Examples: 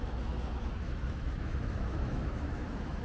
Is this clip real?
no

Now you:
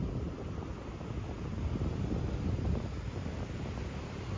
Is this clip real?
yes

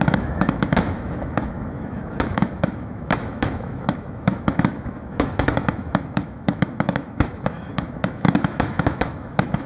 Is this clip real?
no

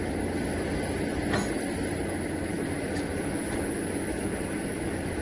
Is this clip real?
yes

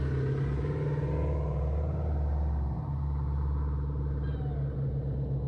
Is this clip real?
yes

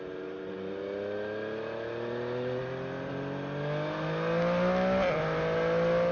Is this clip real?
yes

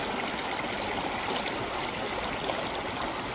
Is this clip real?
yes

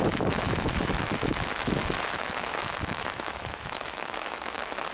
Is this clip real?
no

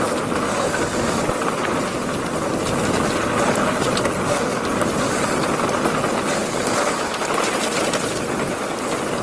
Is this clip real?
yes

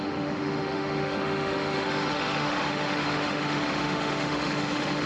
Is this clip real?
no